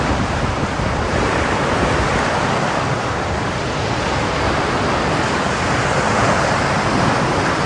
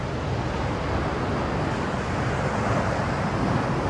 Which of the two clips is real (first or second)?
second